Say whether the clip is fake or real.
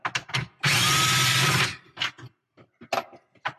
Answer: real